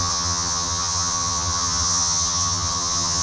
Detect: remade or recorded remade